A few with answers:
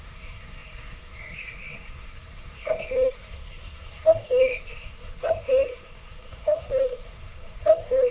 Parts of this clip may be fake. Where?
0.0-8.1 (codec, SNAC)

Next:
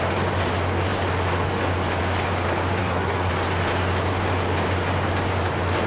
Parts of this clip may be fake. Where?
2.8-3.3 (codec, SNAC)

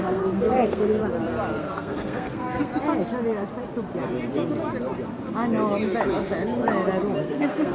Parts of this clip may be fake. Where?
0.0-1.0 (codec, SNAC); 1.6-2.7; 7.2-7.7

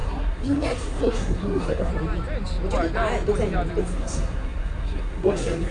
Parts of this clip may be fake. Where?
0.0-1.9 (codec, SNAC); 3.8-5.7